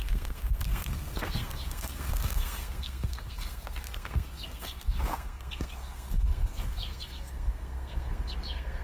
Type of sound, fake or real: fake